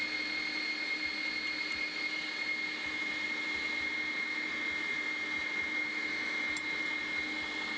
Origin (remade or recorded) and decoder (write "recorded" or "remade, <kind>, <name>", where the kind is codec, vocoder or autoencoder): recorded